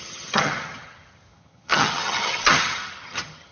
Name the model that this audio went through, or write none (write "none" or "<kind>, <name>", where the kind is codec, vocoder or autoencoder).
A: vocoder, HiFi-GAN